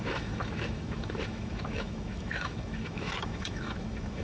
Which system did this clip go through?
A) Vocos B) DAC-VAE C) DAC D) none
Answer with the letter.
B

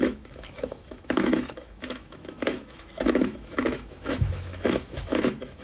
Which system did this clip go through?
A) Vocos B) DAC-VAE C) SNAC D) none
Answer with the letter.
B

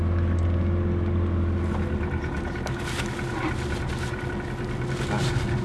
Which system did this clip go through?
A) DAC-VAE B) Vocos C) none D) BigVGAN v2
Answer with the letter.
C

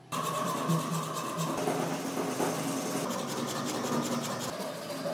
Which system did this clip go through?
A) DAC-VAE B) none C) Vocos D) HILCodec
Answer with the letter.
B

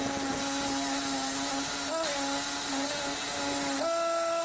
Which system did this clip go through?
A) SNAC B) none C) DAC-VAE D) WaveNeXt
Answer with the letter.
B